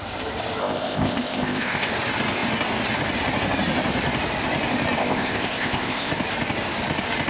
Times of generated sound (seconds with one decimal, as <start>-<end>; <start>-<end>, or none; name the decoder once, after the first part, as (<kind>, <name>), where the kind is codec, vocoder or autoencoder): 0.6-1.9 (codec, ZipCodec); 5.0-6.1